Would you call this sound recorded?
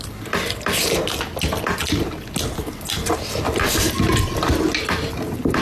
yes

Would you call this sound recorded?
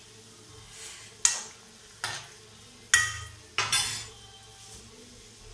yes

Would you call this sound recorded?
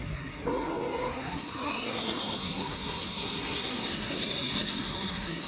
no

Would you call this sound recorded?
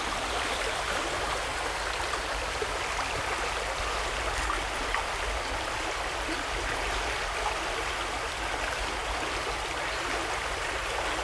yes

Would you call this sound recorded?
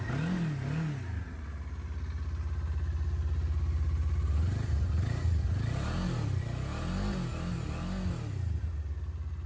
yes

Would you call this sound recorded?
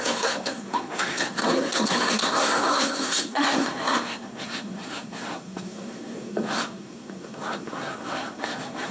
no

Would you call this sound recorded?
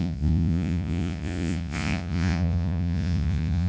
no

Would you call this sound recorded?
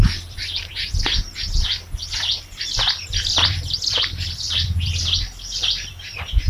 no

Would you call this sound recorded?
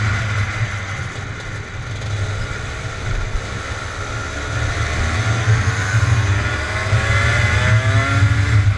yes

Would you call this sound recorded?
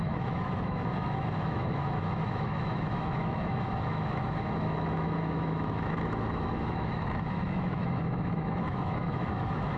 no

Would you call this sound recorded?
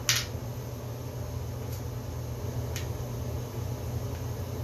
yes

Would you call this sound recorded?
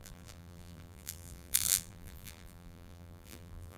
no